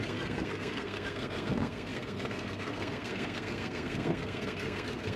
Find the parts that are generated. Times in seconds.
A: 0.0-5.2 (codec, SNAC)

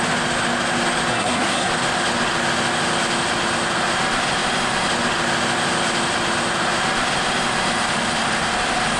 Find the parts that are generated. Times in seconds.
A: 1.1-1.7 (codec, SNAC)